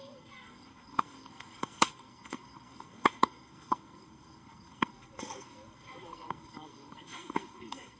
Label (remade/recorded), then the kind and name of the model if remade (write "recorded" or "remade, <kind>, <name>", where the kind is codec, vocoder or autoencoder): remade, codec, SNAC